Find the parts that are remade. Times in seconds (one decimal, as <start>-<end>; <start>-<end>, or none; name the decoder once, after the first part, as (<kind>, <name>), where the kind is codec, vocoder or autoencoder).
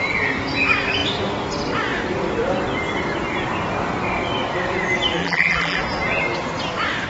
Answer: 5.2-5.8 (vocoder, BigVGAN v2)